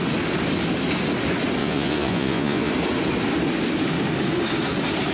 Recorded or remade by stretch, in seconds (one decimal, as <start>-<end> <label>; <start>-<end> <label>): 0.0-1.6 recorded; 1.6-2.7 remade; 2.7-5.1 recorded